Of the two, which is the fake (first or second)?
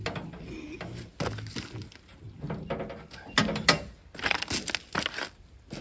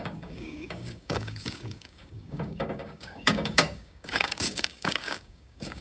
second